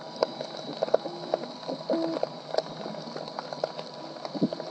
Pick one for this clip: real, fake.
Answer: real